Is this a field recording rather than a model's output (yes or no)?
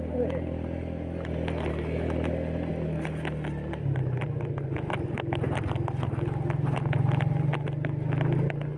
yes